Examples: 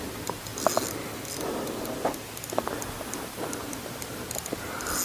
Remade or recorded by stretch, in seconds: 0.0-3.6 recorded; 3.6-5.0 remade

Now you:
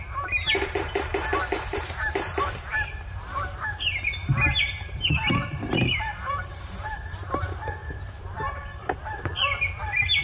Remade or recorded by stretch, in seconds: 0.0-1.1 remade; 1.1-1.7 recorded; 1.7-7.8 remade; 7.8-9.7 recorded; 9.7-10.2 remade